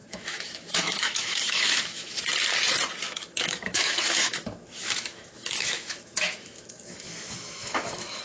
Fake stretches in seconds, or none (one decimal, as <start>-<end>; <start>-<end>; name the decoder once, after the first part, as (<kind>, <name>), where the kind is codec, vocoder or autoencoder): 0.0-2.2 (autoencoder, DAC-VAE); 3.0-8.2